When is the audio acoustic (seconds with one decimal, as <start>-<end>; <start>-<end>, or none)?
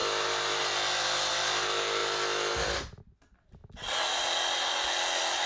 0.0-5.5